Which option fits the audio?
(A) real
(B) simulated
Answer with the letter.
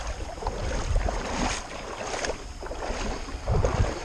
A